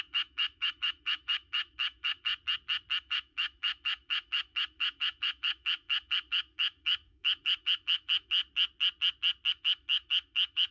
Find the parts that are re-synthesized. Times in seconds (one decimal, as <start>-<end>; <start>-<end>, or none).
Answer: 0.0-2.3; 3.0-8.4; 9.5-10.7